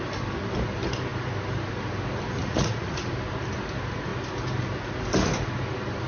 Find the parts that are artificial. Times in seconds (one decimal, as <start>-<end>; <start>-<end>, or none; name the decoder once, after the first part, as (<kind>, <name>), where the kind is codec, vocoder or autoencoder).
2.4-3.1 (vocoder, Vocos)